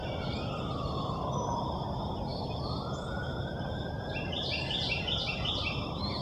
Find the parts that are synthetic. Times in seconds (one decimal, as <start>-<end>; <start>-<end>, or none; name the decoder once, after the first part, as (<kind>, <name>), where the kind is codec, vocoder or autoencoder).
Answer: none